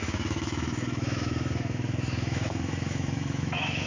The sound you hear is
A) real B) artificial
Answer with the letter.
B